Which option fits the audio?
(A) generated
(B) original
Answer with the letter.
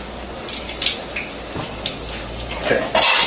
B